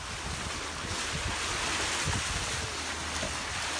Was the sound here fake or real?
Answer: real